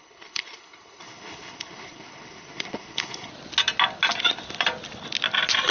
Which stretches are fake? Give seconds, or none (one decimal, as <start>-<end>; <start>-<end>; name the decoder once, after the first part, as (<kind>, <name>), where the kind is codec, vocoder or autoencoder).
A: 0.0-3.3 (codec, HILCodec)